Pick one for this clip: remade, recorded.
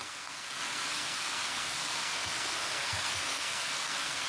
remade